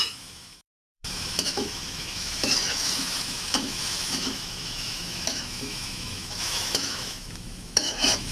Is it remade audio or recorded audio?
remade